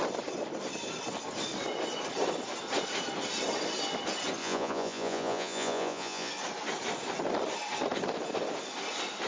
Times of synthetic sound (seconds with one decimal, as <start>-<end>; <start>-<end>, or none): 4.4-6.3